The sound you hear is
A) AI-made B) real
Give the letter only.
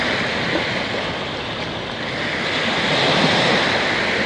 B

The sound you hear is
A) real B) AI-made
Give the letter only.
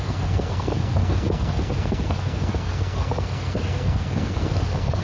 B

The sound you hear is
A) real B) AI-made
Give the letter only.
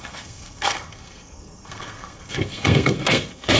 B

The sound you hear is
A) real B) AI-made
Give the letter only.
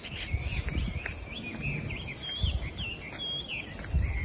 A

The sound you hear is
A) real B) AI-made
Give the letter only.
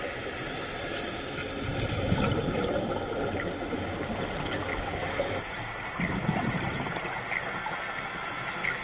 A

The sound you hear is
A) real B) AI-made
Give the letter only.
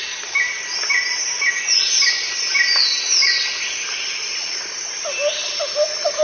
A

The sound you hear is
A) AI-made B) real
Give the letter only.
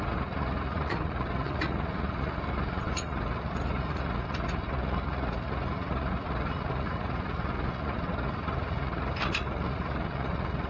A